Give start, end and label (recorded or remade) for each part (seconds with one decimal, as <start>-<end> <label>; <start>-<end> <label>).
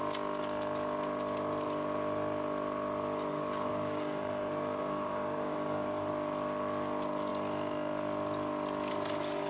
0.0-3.3 recorded; 3.3-6.1 remade; 6.1-9.5 recorded